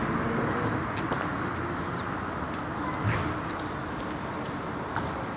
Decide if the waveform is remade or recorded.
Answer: recorded